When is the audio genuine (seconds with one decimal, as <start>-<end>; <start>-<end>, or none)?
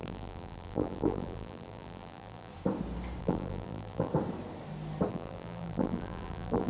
2.5-3.2; 4.1-5.1